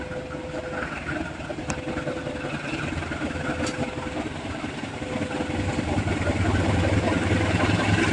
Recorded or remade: recorded